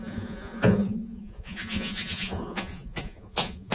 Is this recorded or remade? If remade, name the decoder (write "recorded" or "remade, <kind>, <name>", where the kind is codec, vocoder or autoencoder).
remade, vocoder, Vocos